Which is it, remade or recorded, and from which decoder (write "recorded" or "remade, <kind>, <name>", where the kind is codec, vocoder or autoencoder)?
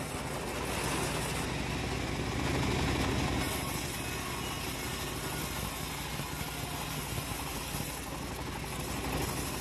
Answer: recorded